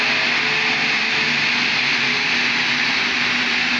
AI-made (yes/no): no